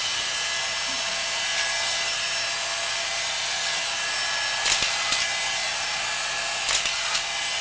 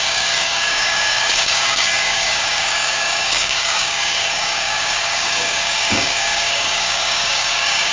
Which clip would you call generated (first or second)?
second